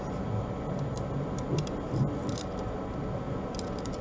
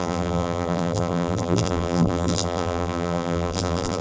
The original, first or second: first